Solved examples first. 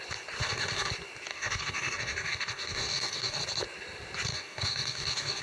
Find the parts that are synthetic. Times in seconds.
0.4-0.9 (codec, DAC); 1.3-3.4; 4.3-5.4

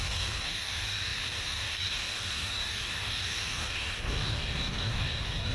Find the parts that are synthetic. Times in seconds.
0.0-5.5 (codec, DAC)

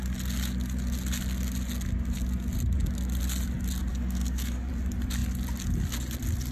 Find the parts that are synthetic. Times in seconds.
3.9-4.7 (codec, DAC)

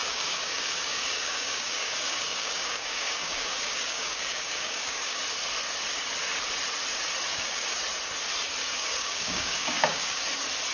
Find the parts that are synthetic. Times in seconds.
0.0-5.2 (codec, DAC); 7.3-7.8; 8.6-10.2

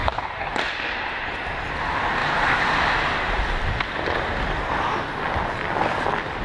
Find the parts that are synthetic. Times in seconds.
0.0-0.5 (codec, DAC)

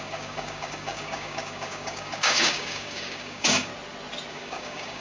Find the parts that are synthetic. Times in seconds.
0.0-3.7 (codec, DAC); 4.3-5.0

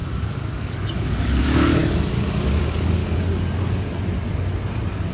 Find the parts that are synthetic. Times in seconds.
0.0-3.0 (codec, DAC)